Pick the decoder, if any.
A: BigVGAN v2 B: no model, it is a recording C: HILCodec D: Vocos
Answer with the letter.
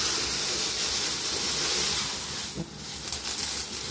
B